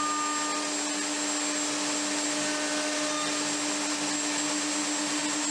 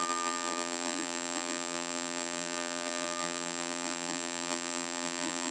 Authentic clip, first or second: first